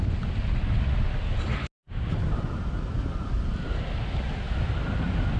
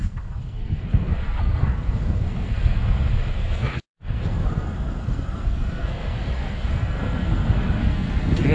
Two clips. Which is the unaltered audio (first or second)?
first